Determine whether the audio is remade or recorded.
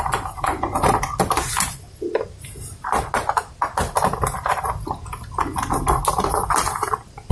recorded